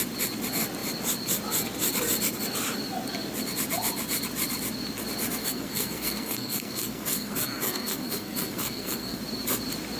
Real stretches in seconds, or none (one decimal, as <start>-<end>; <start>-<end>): 0.0-5.4; 9.2-10.0